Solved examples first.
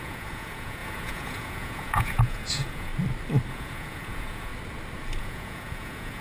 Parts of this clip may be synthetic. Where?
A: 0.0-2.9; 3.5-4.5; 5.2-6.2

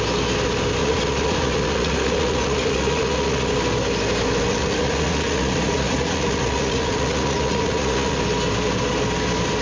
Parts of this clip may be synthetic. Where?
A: 0.8-3.5; 4.5-8.2